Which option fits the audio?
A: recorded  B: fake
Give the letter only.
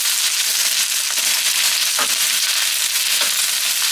A